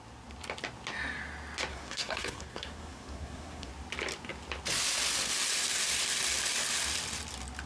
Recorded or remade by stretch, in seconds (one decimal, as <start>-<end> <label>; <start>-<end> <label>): 0.0-1.7 recorded; 1.7-3.7 remade; 3.7-7.7 recorded